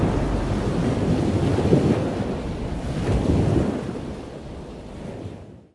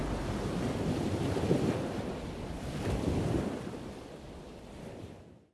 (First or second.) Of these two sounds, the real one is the first